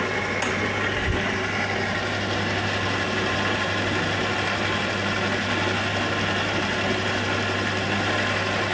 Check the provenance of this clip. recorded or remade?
remade